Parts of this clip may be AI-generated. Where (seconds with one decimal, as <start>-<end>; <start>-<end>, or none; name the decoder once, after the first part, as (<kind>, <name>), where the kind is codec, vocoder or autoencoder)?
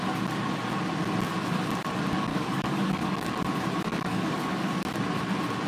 2.3-3.3 (codec, DAC); 3.9-4.7